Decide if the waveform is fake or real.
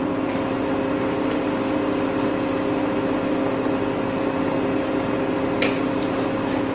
real